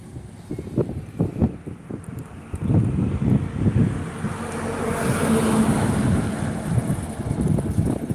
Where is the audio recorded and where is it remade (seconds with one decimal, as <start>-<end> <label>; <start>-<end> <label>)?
0.0-8.1 recorded